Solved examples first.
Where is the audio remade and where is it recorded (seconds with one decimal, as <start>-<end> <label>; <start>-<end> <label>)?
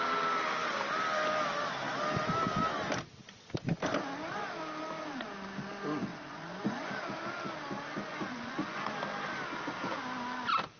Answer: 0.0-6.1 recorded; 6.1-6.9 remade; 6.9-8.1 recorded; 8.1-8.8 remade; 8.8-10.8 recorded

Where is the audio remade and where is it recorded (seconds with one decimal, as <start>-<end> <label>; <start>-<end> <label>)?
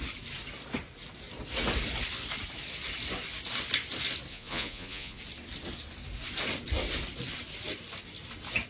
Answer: 0.0-4.3 recorded; 4.3-5.2 remade; 5.2-8.7 recorded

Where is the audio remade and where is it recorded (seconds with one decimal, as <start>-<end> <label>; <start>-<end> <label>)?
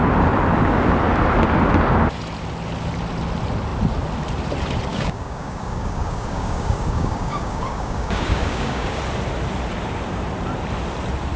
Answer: 0.0-4.9 recorded; 4.9-9.0 remade; 9.0-11.4 recorded